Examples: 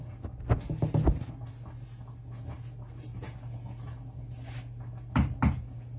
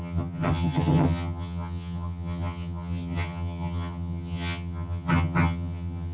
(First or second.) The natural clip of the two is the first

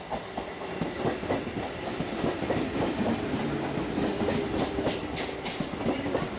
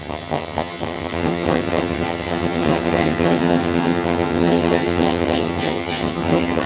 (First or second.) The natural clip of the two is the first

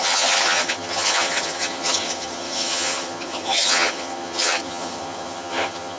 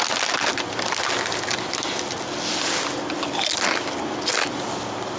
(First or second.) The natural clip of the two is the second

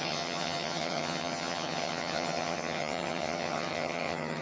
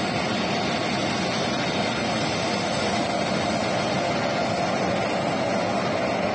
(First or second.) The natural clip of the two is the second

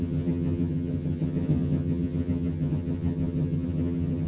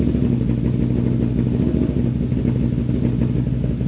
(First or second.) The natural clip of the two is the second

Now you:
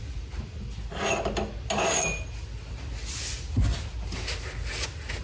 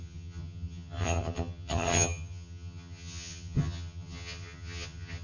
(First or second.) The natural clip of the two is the first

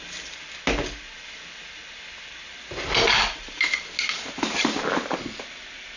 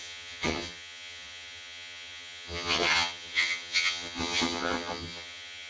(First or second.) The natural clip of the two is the first